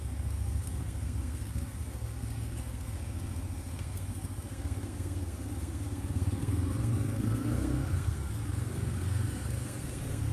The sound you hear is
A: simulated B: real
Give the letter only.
A